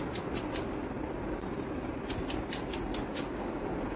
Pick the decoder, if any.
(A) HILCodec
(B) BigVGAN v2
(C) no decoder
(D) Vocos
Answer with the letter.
C